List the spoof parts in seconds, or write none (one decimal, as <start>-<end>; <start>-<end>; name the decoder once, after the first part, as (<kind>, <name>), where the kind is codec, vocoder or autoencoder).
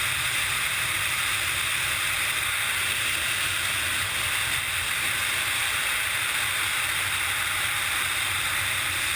none